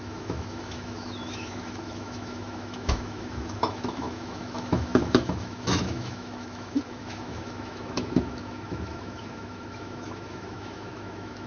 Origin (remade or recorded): remade